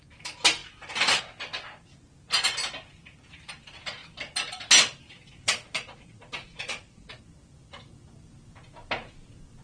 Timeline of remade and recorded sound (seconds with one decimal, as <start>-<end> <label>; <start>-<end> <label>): 0.0-5.4 recorded; 5.4-7.2 remade; 7.2-9.6 recorded